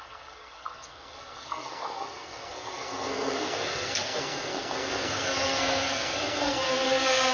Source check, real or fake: fake